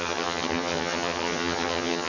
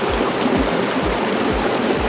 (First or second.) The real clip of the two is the second